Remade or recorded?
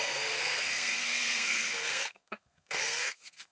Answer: remade